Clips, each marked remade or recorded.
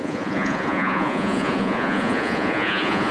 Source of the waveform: remade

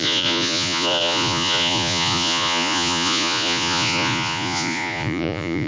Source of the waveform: remade